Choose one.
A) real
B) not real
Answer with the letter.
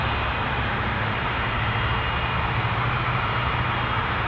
B